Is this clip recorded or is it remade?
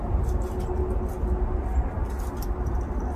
recorded